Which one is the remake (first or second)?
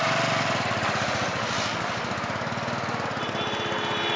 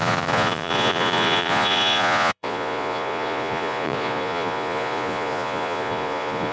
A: second